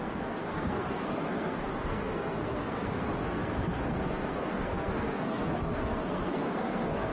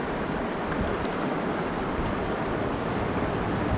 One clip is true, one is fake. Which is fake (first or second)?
first